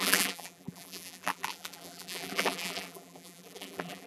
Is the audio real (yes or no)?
no